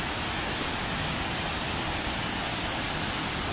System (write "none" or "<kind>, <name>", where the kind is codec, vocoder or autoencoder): none